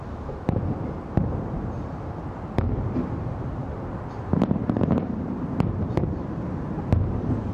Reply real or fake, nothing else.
real